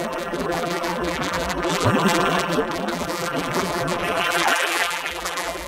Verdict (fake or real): fake